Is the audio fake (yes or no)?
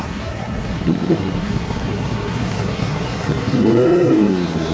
yes